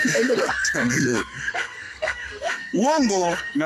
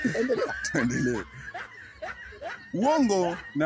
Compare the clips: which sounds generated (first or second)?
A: first